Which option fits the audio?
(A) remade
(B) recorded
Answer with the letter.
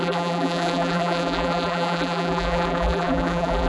A